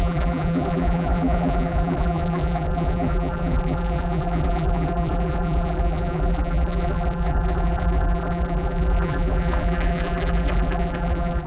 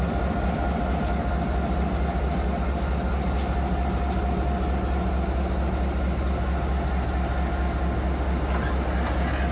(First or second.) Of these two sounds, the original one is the second